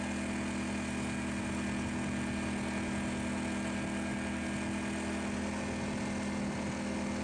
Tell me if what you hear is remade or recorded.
recorded